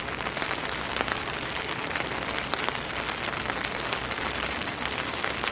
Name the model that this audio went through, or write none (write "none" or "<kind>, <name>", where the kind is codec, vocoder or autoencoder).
none